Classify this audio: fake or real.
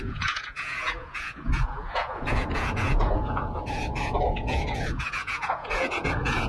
fake